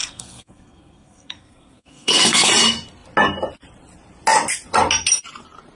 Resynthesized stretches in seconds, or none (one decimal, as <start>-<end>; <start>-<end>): 0.0-2.5